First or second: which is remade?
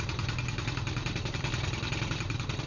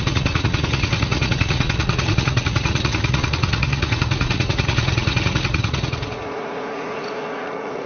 second